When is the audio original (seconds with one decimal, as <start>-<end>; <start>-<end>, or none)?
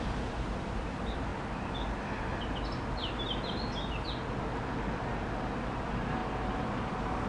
1.3-5.7; 6.2-7.3